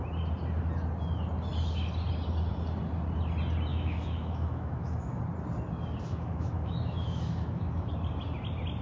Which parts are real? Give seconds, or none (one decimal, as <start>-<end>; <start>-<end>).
0.0-3.7; 5.2-6.1; 7.9-8.8